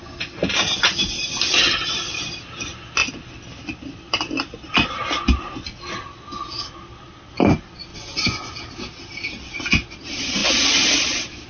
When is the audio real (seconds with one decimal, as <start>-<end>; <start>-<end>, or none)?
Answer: 0.0-7.9; 8.5-11.5